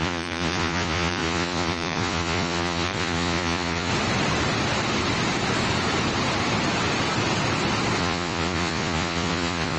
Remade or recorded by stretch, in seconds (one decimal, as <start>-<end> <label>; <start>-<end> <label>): 0.0-3.9 remade; 3.9-8.0 recorded; 8.0-9.8 remade